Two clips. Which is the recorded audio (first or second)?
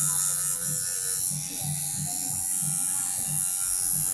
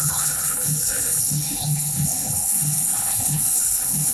first